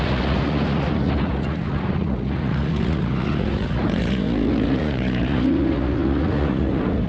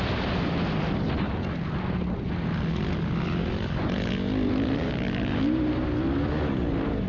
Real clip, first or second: second